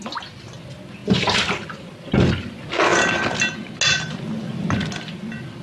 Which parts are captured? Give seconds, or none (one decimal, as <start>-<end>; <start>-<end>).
0.0-5.6

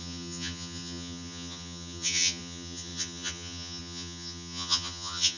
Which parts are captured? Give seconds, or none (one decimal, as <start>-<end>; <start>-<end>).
none

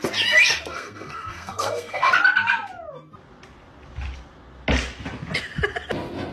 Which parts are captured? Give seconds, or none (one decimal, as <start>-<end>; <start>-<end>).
0.0-0.7; 2.1-6.3

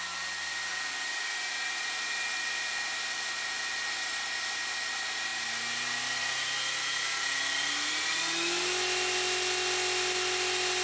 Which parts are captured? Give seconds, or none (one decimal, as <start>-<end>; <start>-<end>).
0.0-10.8

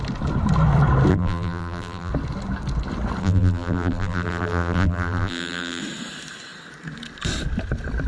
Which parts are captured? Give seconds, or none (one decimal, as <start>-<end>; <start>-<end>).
0.0-1.1; 2.1-3.2; 5.8-8.1